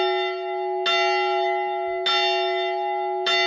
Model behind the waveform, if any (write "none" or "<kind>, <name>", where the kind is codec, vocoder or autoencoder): none